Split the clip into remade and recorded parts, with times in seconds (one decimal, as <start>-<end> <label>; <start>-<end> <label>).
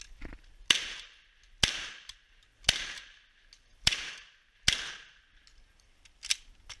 0.0-3.7 recorded; 3.7-4.3 remade; 4.3-6.8 recorded